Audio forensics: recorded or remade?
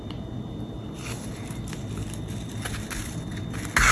recorded